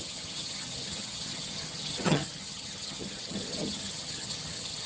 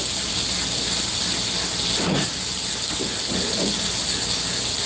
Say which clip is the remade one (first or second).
first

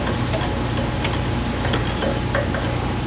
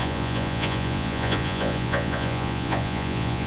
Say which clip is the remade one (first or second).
second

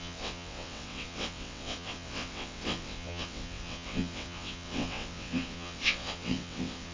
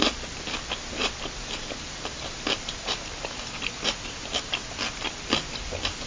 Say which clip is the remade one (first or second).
first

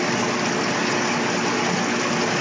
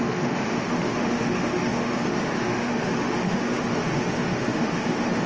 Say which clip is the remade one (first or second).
second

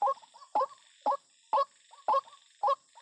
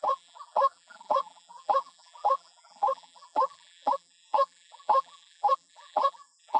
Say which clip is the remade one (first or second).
second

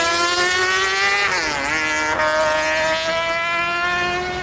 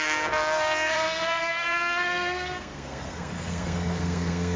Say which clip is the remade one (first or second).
second